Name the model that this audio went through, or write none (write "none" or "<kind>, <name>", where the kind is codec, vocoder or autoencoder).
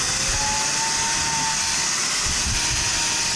none